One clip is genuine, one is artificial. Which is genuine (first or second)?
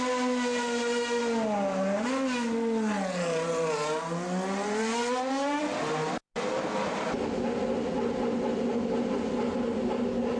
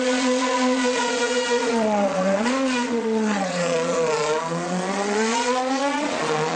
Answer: first